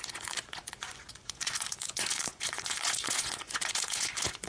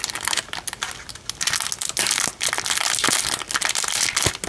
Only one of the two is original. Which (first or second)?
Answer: second